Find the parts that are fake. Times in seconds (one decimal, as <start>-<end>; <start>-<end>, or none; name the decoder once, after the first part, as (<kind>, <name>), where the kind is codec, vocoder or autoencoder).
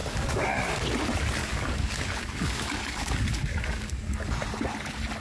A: 0.0-0.8 (codec, DAC); 1.4-4.3